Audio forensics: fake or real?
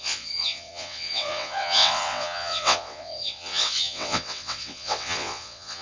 fake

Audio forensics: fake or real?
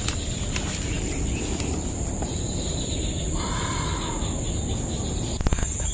real